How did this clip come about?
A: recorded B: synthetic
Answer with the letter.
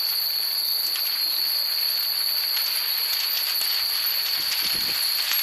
A